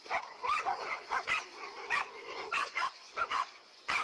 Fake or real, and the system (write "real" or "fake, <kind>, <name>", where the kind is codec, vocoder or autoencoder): fake, vocoder, Vocos